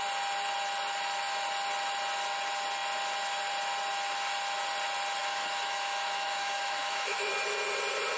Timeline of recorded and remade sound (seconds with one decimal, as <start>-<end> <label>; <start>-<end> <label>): 0.0-5.2 recorded; 5.2-7.3 remade; 7.3-8.2 recorded